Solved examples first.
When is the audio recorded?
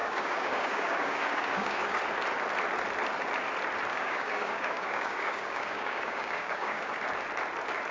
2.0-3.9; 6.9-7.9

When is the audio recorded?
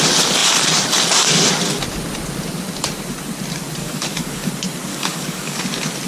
0.0-3.8; 4.5-4.9; 5.6-6.1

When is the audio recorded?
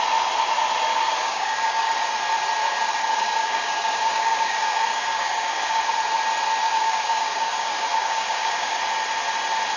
0.0-0.9; 1.9-2.6; 5.9-6.6; 8.8-9.8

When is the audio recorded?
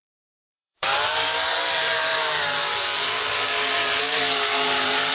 none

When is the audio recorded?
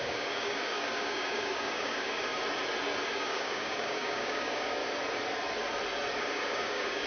2.3-3.1; 4.8-6.2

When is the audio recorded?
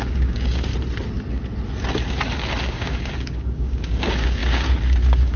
0.7-2.6